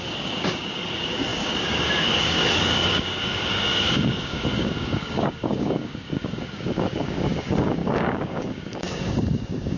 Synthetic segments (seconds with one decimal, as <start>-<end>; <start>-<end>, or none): 0.0-9.8